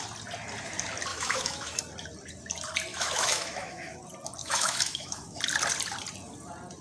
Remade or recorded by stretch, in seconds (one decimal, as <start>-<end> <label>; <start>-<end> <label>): 0.0-1.1 recorded; 1.1-1.8 remade; 1.8-2.9 recorded; 2.9-4.0 remade; 4.0-4.4 recorded; 4.4-5.4 remade; 5.4-6.8 recorded